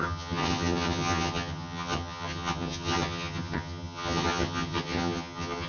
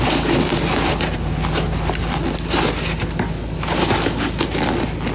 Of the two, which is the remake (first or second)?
first